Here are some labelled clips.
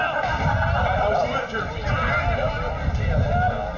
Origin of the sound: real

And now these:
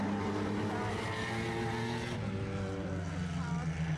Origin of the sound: real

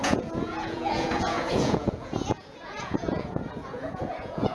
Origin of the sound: fake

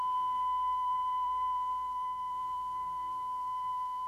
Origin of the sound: fake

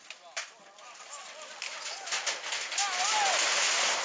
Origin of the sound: real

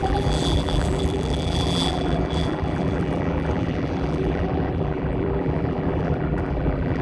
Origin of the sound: fake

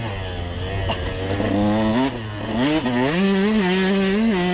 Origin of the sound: real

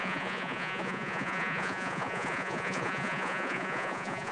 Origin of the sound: fake